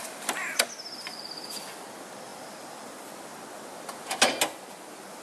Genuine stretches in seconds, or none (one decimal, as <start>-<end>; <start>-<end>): 0.0-5.2